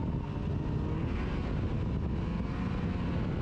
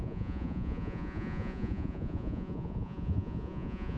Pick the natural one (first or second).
first